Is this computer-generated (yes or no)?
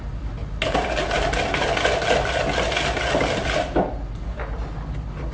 no